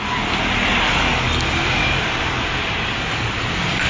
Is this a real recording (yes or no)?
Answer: no